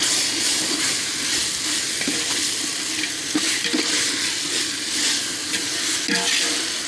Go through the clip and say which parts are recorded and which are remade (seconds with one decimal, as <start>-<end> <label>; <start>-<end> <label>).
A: 0.0-6.9 recorded